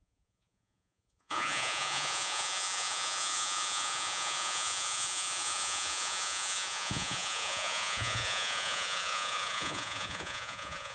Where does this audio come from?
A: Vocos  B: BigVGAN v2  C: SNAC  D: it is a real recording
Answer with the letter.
A